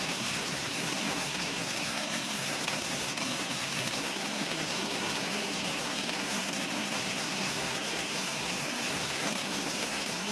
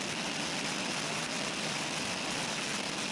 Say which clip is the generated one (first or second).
first